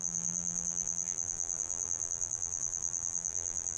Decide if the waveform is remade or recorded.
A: remade